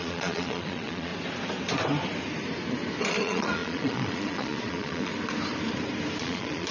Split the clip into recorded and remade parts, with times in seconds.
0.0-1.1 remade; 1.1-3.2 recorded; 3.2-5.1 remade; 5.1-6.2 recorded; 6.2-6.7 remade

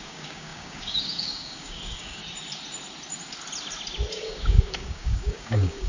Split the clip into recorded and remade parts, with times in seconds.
0.0-2.2 remade; 2.2-4.1 recorded; 4.1-5.9 remade

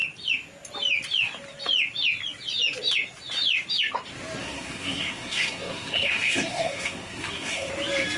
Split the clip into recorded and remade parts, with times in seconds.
0.0-4.4 recorded; 4.4-7.7 remade; 7.7-8.2 recorded

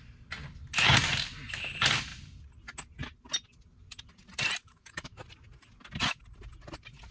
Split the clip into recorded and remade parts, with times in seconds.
0.0-4.6 recorded; 4.6-5.2 remade; 5.2-7.1 recorded

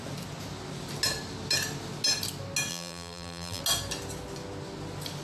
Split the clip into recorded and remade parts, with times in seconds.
0.0-2.7 recorded; 2.7-3.6 remade; 3.6-5.2 recorded

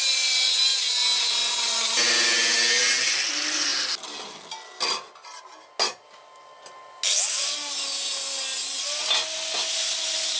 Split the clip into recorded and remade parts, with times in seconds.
0.0-10.4 recorded

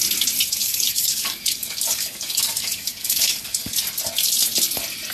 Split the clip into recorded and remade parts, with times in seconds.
0.0-0.6 recorded; 0.6-3.7 remade; 3.7-5.1 recorded

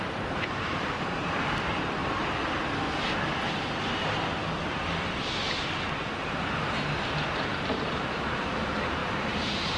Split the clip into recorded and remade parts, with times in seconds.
0.0-2.0 remade; 2.0-6.2 recorded; 6.2-9.8 remade